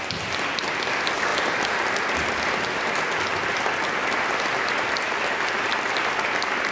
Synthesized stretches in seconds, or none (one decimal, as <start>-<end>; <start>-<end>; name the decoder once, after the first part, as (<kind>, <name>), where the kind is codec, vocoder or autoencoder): none